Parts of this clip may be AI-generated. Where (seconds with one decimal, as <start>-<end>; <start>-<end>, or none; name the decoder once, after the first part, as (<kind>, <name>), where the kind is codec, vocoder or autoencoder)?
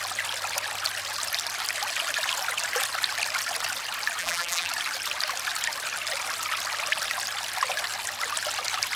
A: 4.2-4.7 (vocoder, BigVGAN v2)